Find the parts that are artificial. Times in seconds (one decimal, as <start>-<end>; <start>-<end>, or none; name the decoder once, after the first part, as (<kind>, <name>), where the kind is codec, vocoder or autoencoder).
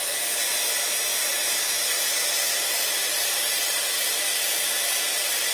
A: none